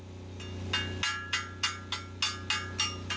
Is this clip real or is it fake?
real